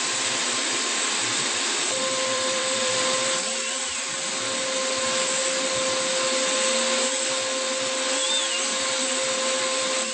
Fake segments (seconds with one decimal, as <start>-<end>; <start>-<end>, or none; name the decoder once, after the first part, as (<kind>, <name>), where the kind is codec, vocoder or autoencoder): 2.0-4.1 (vocoder, BigVGAN v2)